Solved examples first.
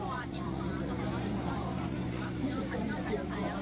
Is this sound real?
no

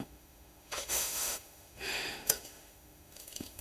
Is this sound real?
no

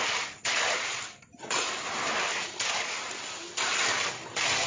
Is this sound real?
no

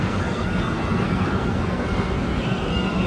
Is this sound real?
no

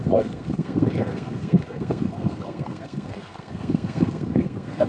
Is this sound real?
no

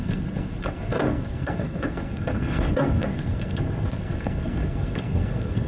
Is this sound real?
no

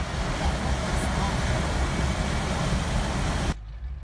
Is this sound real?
yes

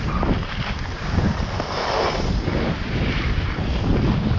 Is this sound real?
yes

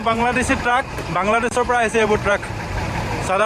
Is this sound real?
no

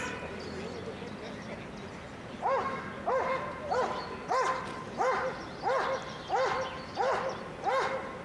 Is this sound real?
yes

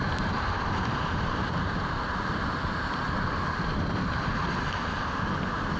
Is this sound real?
no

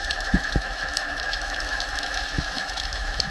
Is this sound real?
no